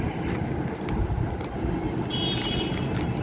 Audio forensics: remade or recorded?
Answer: recorded